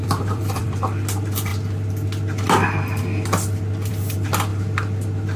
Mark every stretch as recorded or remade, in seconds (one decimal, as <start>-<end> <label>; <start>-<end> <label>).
0.0-0.8 remade; 0.8-5.4 recorded

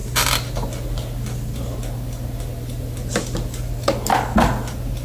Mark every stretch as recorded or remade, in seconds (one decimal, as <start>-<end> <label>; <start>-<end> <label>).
0.0-5.0 recorded

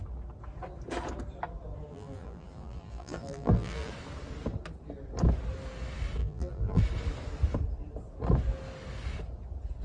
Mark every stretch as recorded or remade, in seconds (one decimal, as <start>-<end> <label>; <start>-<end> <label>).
0.0-1.9 recorded; 1.9-3.9 remade; 3.9-6.2 recorded; 6.2-6.8 remade; 6.8-9.8 recorded

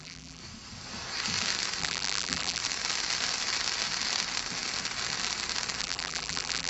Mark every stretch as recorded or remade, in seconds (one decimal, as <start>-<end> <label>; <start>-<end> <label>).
0.0-0.4 remade; 0.4-1.8 recorded; 1.8-2.6 remade; 2.6-5.8 recorded; 5.8-6.7 remade